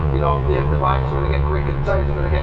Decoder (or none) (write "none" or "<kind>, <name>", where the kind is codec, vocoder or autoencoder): vocoder, Vocos